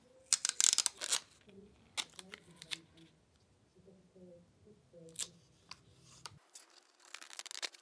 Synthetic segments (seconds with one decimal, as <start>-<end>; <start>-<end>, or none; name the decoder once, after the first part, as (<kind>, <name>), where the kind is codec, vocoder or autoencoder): none